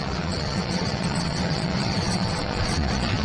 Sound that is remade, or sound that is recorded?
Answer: remade